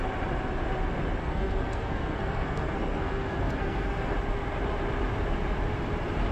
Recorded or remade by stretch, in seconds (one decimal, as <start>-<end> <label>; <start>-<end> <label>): 0.0-1.2 recorded; 1.2-4.1 remade; 4.1-6.3 recorded